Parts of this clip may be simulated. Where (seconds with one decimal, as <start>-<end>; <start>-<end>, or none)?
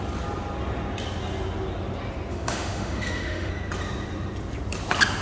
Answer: 2.3-3.5